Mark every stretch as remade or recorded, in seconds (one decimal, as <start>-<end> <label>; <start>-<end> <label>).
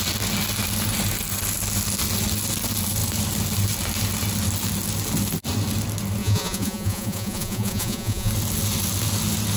0.0-6.2 recorded; 6.2-8.3 remade; 8.3-9.6 recorded